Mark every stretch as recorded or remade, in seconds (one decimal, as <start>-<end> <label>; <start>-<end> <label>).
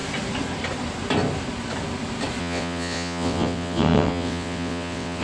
0.0-2.4 recorded; 2.4-5.2 remade